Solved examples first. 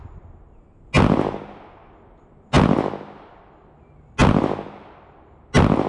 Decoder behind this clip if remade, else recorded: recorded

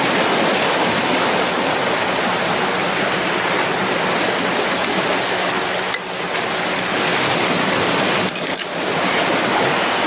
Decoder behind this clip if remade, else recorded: recorded